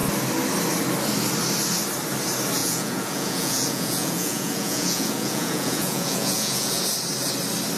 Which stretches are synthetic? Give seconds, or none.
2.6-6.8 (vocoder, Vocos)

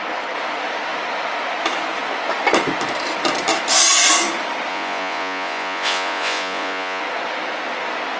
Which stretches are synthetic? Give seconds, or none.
4.7-7.0 (vocoder, Vocos)

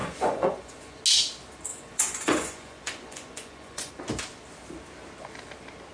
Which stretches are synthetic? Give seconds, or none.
0.0-1.0 (vocoder, Vocos); 1.7-3.9

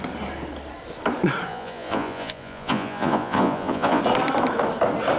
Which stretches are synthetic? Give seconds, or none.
1.5-4.0 (vocoder, Vocos)

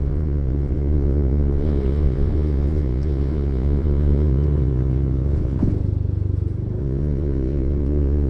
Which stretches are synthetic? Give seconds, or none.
0.0-5.7 (vocoder, Vocos); 6.8-8.3

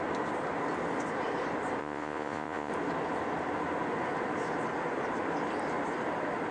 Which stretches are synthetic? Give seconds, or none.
1.8-2.7 (vocoder, Vocos)

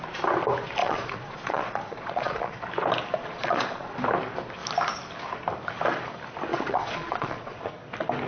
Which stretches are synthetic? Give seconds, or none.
0.8-2.6 (vocoder, Vocos); 3.2-3.9; 6.5-7.7

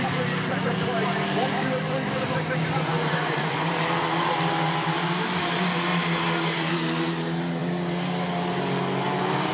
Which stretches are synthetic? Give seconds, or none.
2.7-3.7 (vocoder, Vocos)